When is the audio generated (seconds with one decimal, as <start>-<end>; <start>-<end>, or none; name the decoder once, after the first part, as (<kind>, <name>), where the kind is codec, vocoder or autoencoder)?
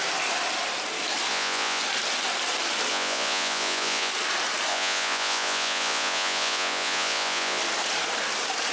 1.3-1.8 (vocoder, Vocos); 2.9-4.1; 4.7-7.6